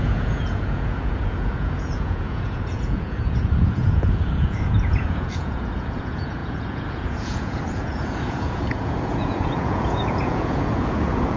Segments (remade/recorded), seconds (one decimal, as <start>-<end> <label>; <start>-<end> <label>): 0.0-11.4 remade